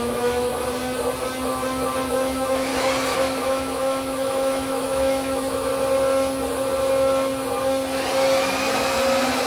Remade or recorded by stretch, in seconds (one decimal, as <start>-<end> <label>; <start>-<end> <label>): 0.0-0.5 remade; 0.5-2.1 recorded; 2.1-2.7 remade; 2.7-3.4 recorded; 3.4-5.7 remade; 5.7-9.5 recorded